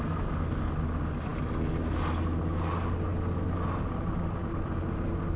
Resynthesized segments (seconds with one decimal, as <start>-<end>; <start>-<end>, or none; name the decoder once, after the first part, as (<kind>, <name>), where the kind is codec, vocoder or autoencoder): none